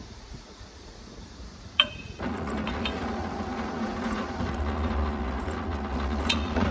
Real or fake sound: fake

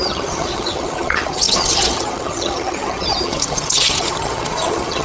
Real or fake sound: fake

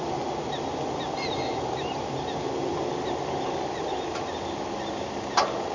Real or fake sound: real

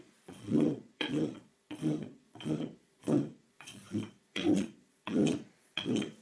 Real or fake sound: fake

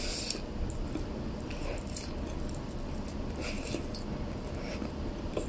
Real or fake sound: real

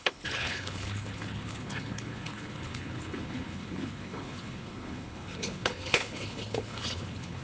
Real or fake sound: fake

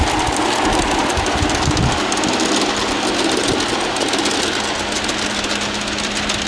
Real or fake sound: real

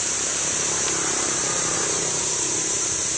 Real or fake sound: fake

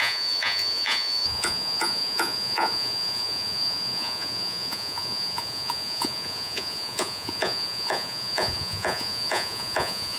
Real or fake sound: fake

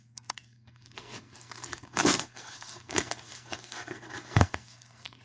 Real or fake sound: fake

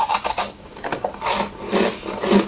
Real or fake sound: real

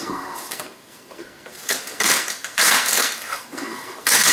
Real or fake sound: fake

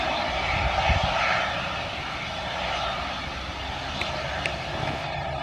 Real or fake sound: real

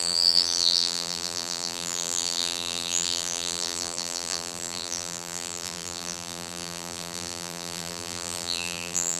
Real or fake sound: fake